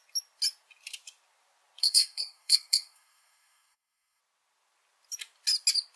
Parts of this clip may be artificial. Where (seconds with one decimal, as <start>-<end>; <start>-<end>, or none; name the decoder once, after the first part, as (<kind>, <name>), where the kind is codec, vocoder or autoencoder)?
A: 1.8-4.2 (codec, SNAC)